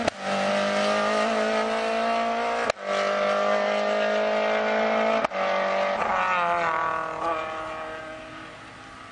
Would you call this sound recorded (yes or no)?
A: yes